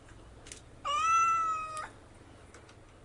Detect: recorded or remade recorded